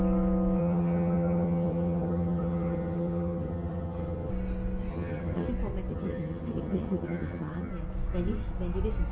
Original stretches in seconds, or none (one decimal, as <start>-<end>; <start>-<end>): 0.0-0.6; 4.3-4.9; 5.5-5.9; 7.7-9.1

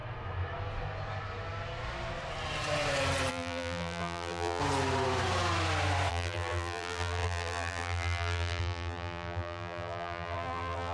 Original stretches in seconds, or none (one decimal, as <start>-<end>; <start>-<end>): 0.0-3.3; 4.6-6.1

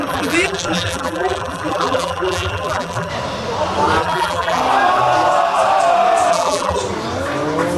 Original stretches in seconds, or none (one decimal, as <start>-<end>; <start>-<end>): 3.1-4.0; 4.6-6.3; 6.8-7.8

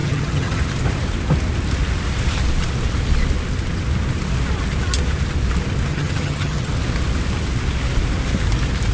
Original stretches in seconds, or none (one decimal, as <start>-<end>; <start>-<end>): 0.6-5.9; 6.7-8.9